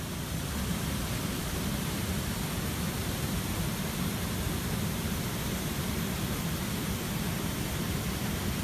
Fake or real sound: fake